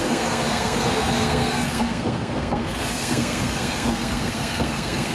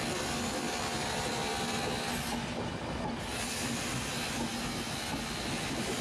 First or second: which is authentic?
second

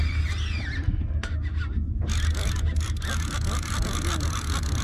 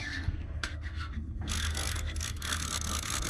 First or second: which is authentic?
first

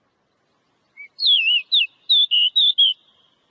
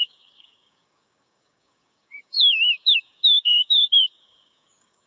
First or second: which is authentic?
first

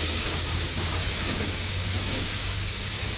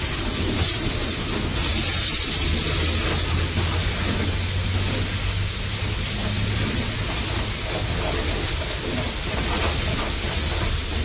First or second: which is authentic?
second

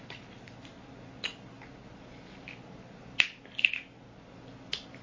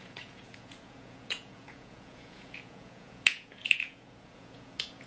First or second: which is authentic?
first